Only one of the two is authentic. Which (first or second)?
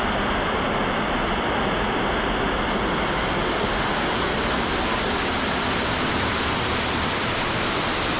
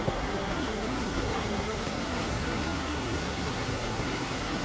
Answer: first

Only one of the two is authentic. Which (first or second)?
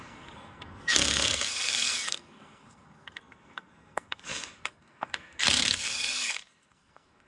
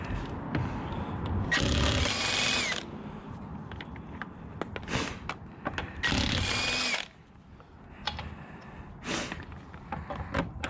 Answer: second